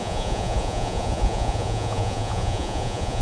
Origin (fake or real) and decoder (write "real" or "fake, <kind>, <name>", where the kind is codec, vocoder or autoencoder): fake, vocoder, Vocos